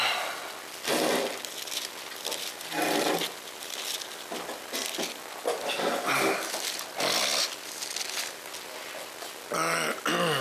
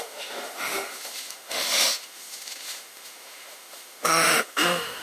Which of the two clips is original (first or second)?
first